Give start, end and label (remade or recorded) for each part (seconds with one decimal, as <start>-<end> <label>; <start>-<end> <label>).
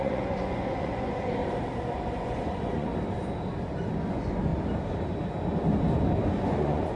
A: 0.0-1.4 remade; 1.4-2.2 recorded; 2.2-2.9 remade; 2.9-4.1 recorded; 4.1-4.5 remade; 4.5-6.3 recorded; 6.3-7.0 remade